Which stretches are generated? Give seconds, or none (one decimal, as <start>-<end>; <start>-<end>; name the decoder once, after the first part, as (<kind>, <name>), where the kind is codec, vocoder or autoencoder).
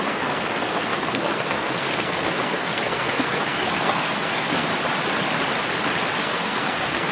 0.0-4.7 (codec, SNAC); 6.2-7.1